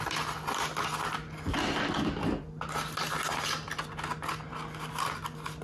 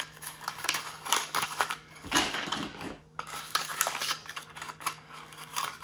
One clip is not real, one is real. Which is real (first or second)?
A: first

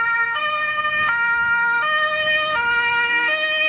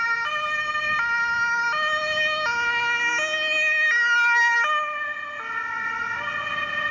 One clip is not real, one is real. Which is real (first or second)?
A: second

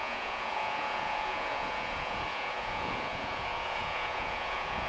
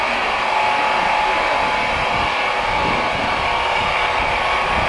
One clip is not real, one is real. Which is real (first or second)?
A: second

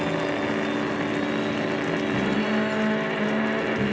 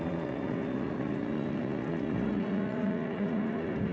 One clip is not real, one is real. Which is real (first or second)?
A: first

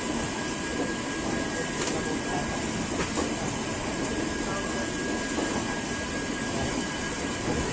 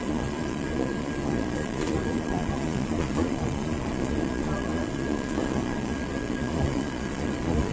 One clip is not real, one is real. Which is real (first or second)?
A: first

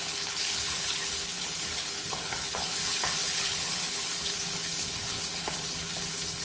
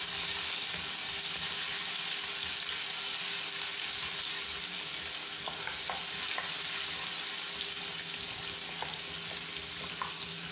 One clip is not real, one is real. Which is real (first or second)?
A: second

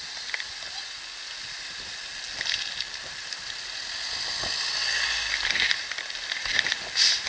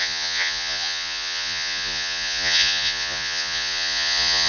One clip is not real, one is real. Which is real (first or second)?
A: first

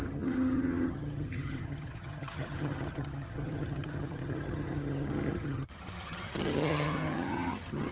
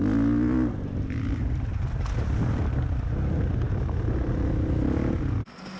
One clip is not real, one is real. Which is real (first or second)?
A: second